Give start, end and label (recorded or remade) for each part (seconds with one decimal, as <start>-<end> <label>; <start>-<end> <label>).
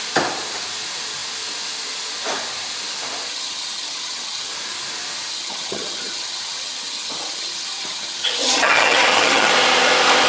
0.0-3.3 recorded; 3.3-4.5 remade; 4.5-5.3 recorded; 5.3-9.5 remade; 9.5-10.3 recorded